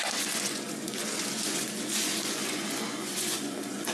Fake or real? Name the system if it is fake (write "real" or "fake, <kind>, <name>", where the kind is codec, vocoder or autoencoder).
fake, vocoder, Vocos